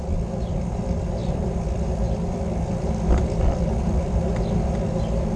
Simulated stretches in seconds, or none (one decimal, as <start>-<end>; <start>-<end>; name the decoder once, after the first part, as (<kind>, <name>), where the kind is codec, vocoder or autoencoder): 1.2-4.1 (vocoder, BigVGAN v2)